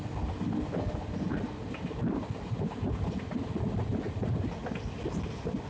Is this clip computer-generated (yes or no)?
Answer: no